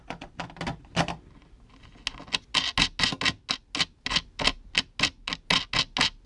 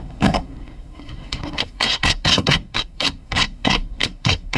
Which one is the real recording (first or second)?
first